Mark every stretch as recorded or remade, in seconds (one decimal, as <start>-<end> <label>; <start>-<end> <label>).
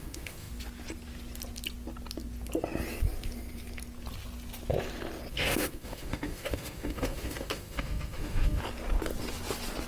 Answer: 0.0-0.5 remade; 0.5-5.3 recorded; 5.3-8.6 remade; 8.6-9.9 recorded